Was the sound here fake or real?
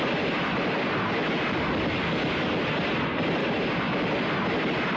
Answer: real